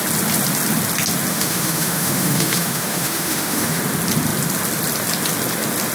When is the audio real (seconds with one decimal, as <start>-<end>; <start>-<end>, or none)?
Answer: 0.0-1.3; 3.8-5.9